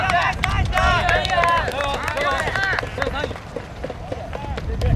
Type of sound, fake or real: real